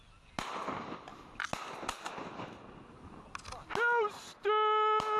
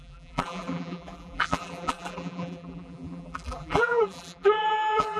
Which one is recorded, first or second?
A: first